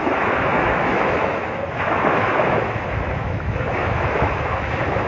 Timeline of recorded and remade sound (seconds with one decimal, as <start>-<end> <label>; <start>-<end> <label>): 0.0-5.1 remade